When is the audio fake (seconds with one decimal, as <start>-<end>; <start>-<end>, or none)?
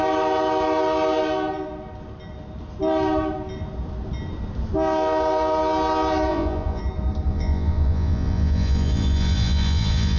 6.3-6.8; 7.3-10.2